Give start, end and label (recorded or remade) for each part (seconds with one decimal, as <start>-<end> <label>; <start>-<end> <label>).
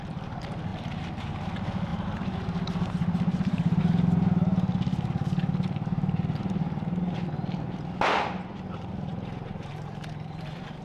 0.0-1.9 recorded; 1.9-3.8 remade; 3.8-9.1 recorded; 9.1-10.8 remade